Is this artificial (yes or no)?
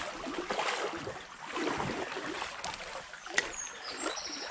no